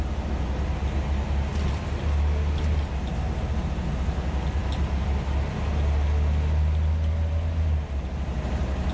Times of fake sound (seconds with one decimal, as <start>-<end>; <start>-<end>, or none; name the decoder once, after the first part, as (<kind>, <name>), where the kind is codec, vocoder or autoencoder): none